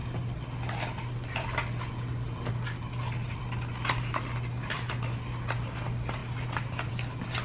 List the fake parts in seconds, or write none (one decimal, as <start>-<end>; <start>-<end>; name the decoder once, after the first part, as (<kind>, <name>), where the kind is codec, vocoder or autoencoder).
none